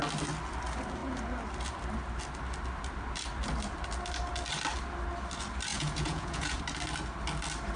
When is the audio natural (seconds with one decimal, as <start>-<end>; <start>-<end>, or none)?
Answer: 0.0-5.7; 6.6-7.8